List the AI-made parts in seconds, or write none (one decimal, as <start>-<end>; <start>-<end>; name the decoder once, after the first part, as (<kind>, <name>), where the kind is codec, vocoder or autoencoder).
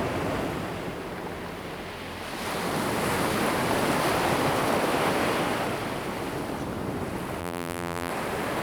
7.4-8.1 (vocoder, BigVGAN v2)